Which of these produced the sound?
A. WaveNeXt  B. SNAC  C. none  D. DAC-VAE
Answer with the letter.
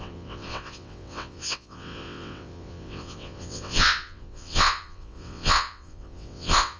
A